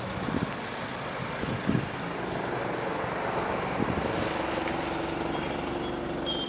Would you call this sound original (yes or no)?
yes